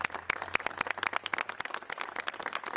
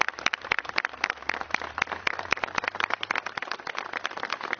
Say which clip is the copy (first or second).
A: second